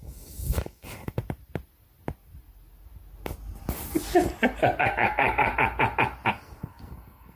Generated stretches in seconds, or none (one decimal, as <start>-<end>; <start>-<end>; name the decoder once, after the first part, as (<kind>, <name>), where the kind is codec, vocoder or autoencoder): 0.0-1.2 (codec, SNAC); 4.8-5.5; 6.3-7.4